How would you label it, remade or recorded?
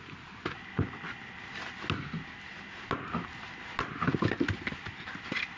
recorded